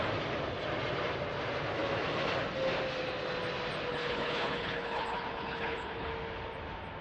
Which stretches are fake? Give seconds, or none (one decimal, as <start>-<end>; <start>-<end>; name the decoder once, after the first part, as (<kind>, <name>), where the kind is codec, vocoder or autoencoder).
3.9-6.1 (codec, HILCodec)